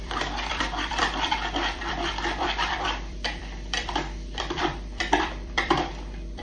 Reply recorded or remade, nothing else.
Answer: remade